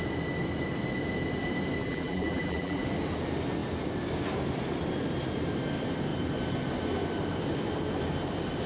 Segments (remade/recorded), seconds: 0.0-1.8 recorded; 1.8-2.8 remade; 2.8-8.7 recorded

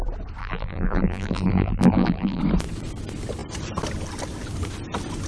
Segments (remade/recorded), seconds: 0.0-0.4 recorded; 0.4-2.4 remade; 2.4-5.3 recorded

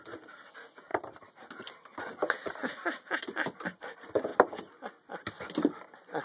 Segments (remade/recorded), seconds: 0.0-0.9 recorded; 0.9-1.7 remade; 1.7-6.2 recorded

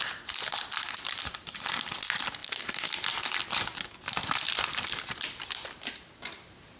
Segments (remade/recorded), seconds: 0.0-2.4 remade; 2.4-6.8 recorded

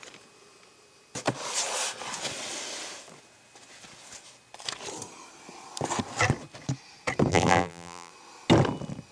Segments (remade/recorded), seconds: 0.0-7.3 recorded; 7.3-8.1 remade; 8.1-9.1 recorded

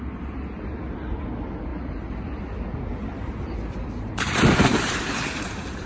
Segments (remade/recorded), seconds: 0.0-1.7 recorded; 1.7-2.4 remade; 2.4-2.9 recorded; 2.9-5.9 remade

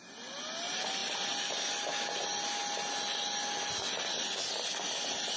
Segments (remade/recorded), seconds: 0.0-5.4 recorded